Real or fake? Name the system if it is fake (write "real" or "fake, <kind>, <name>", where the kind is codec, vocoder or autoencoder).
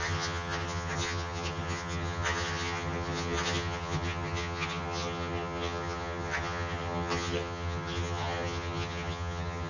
fake, vocoder, HiFi-GAN